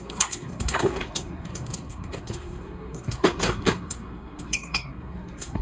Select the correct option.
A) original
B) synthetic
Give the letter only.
B